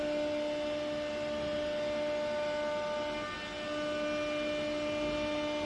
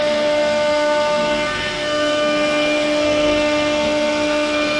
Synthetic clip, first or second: second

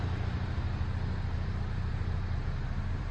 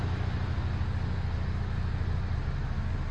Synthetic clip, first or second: first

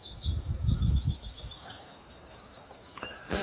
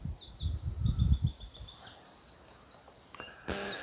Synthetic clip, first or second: first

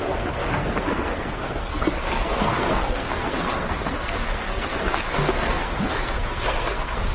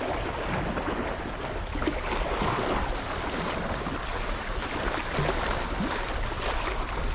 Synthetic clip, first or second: first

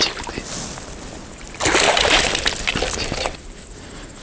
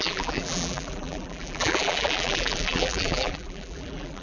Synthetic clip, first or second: second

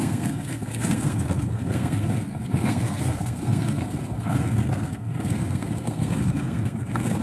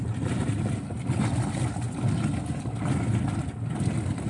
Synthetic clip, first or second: first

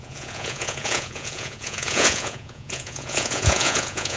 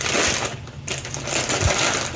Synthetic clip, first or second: first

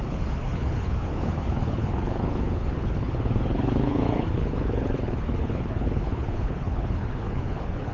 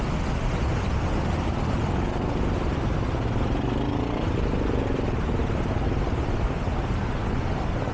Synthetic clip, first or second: first